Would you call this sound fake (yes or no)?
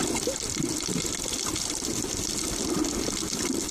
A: no